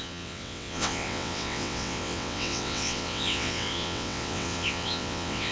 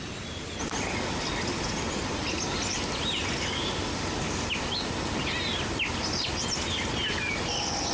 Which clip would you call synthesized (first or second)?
first